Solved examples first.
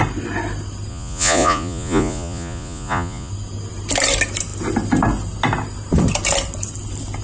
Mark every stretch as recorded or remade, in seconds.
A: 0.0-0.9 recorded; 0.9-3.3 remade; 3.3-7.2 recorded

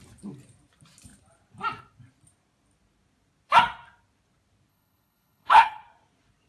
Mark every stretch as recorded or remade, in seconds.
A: 0.0-4.7 recorded; 4.7-5.8 remade; 5.8-6.5 recorded